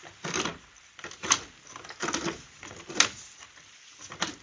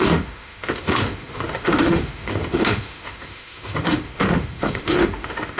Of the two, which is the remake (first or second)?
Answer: second